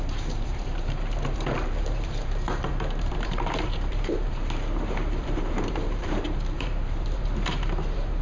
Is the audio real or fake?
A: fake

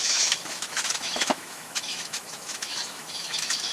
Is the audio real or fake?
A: fake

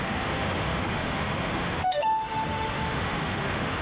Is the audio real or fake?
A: fake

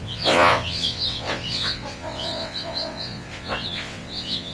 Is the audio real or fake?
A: fake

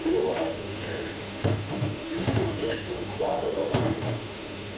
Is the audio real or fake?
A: fake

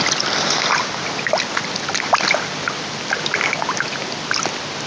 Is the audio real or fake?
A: real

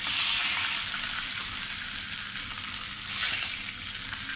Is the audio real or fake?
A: real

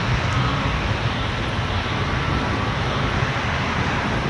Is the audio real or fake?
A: real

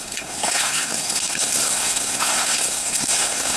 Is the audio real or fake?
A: fake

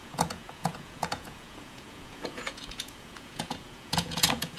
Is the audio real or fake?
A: fake